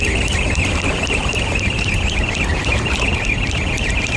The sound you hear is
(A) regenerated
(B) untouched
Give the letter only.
A